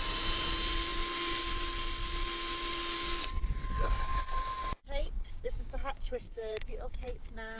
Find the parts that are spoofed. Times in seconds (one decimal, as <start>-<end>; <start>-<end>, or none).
5.0-7.6